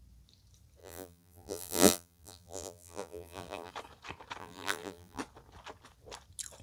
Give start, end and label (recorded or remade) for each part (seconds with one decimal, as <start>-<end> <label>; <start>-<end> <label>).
0.0-0.8 recorded; 0.8-3.7 remade; 3.7-4.4 recorded; 4.4-5.2 remade; 5.2-6.6 recorded